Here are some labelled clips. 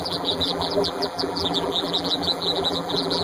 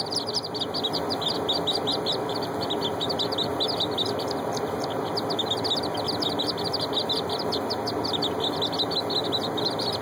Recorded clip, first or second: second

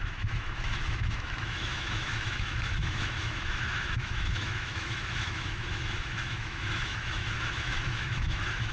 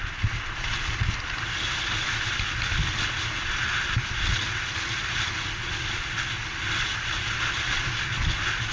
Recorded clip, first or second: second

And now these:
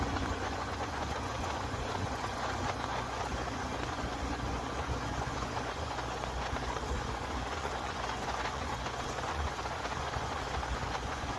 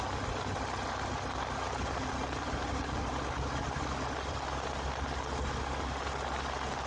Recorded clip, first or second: second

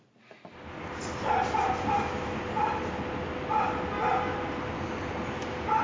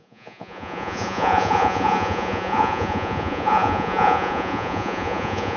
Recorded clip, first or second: first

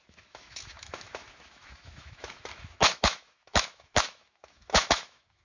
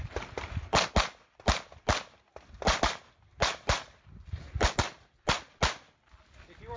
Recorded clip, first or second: second